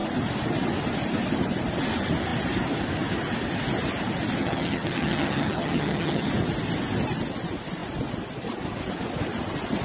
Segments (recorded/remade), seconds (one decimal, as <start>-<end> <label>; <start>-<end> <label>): 0.0-4.4 recorded; 4.4-6.3 remade; 6.3-9.8 recorded